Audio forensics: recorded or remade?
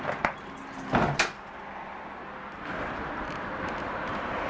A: recorded